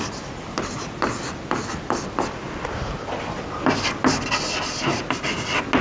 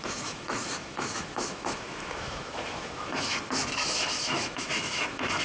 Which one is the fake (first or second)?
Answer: second